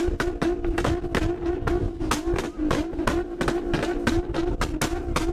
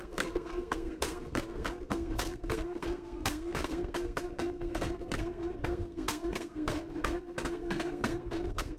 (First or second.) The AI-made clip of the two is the second